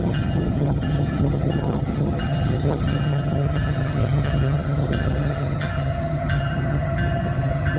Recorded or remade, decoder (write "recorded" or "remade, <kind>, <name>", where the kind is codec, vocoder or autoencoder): remade, vocoder, HiFi-GAN